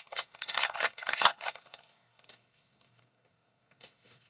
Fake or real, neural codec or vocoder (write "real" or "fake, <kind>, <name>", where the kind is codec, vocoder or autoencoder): fake, codec, SNAC